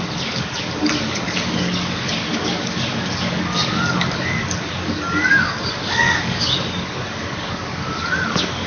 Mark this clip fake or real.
fake